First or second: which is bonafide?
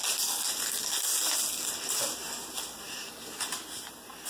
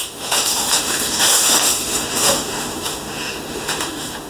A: first